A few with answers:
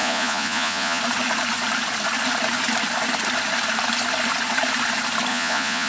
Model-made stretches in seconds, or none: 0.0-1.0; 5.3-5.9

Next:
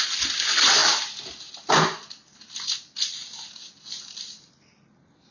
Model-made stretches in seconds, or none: none

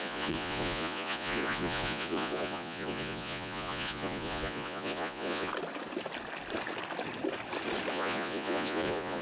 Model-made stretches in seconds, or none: 0.0-5.5; 7.9-9.2

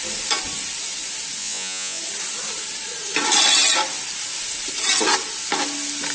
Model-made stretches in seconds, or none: 1.4-2.0

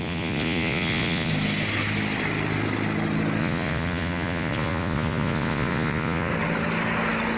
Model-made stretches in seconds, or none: 0.0-1.3; 3.4-6.3

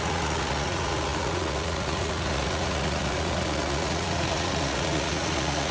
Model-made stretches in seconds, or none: 0.0-5.7